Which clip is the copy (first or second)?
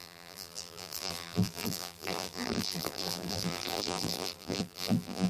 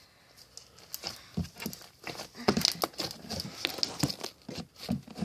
first